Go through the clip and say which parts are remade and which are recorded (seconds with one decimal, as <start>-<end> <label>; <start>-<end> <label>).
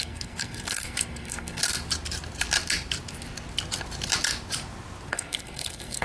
0.0-1.6 remade; 1.6-5.1 recorded; 5.1-6.0 remade